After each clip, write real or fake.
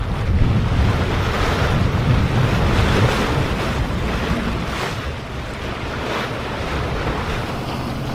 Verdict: real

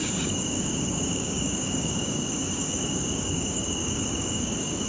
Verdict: fake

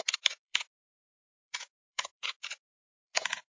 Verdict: fake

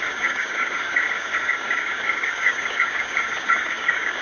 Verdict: fake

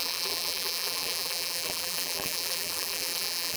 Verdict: fake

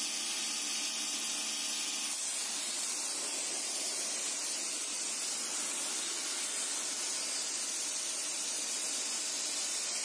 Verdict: real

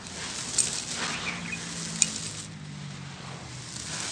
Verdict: real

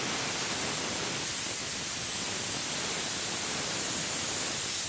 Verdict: real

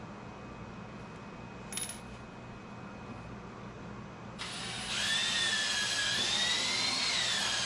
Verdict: real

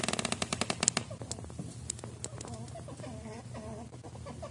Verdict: real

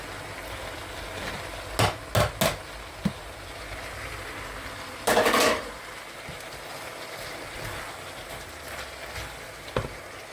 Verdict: real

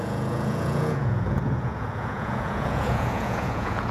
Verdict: fake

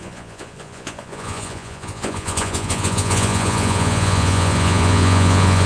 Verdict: fake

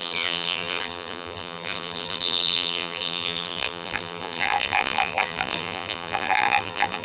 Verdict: fake